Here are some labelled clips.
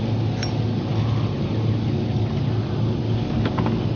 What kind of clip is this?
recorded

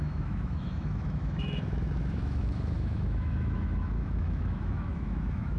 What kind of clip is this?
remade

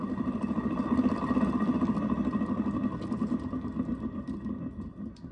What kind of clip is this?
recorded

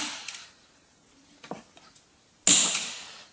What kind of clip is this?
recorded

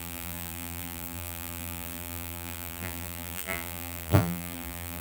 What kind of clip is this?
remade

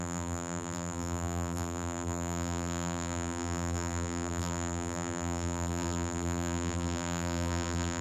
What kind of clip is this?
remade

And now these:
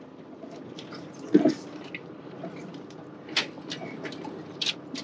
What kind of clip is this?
recorded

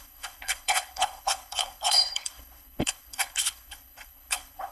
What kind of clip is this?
remade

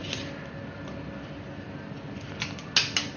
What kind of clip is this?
recorded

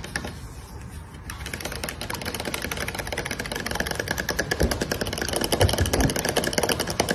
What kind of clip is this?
recorded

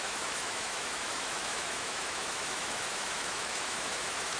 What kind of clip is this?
remade